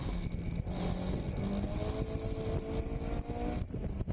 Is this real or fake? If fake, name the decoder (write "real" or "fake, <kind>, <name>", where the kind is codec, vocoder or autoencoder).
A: real